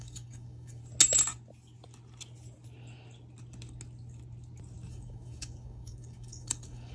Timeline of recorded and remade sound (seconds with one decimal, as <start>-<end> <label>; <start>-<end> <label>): 0.0-0.8 remade; 0.8-4.9 recorded; 4.9-6.9 remade